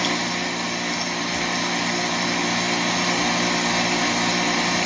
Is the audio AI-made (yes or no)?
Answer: no